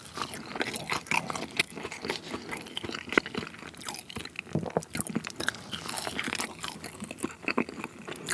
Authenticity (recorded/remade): recorded